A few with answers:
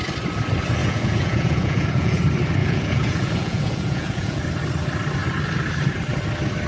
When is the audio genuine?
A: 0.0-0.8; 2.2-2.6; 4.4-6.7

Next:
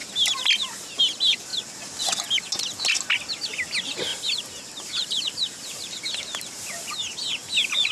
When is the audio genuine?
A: 0.0-4.1; 6.0-7.9

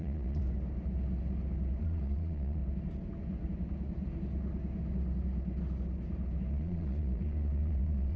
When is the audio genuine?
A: 0.4-1.8; 2.6-6.5

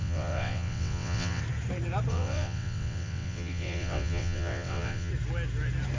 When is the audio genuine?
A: 1.4-2.1; 5.1-6.0

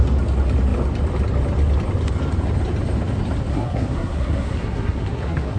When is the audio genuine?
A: 0.0-3.5